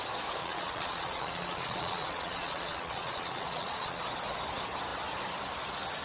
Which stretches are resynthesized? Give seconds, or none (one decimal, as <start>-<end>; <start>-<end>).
0.4-4.0

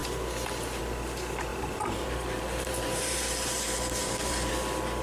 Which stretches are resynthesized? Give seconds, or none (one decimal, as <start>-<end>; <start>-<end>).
1.5-4.5